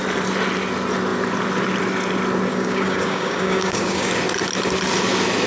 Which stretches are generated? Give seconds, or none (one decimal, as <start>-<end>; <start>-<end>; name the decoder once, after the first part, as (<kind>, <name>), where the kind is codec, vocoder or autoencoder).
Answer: 2.5-4.1 (codec, DAC)